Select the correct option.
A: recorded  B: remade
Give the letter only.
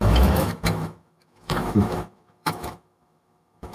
B